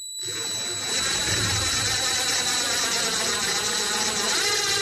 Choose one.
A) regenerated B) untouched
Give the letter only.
A